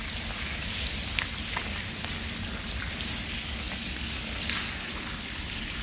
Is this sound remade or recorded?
recorded